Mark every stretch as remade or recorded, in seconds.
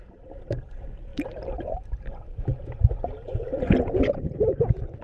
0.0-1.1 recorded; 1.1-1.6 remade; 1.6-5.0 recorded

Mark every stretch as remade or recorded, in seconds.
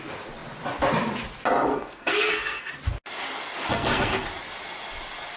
0.0-1.7 recorded; 1.7-2.7 remade; 2.7-3.7 recorded; 3.7-4.3 remade; 4.3-5.4 recorded